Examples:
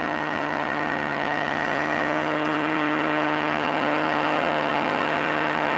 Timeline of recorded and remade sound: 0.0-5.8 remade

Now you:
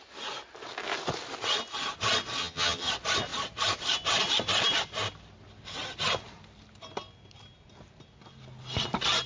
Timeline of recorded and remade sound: 0.0-2.4 recorded; 2.4-2.9 remade; 2.9-9.3 recorded

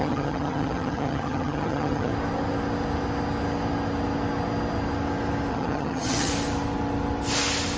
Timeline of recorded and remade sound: 0.0-2.1 remade; 2.1-5.5 recorded; 5.5-6.3 remade; 6.3-7.8 recorded

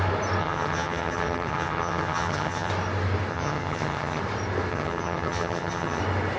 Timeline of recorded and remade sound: 0.0-0.4 recorded; 0.4-2.7 remade; 2.7-3.3 recorded; 3.3-4.2 remade; 4.2-4.7 recorded; 4.7-6.0 remade; 6.0-6.4 recorded

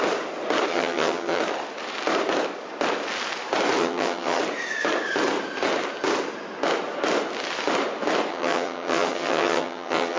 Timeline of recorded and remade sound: 0.0-0.7 recorded; 0.7-1.4 remade; 1.4-3.8 recorded; 3.8-4.4 remade; 4.4-8.3 recorded; 8.3-10.2 remade

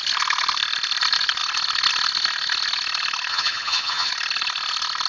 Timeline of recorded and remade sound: 0.0-3.3 recorded; 3.3-4.1 remade; 4.1-5.1 recorded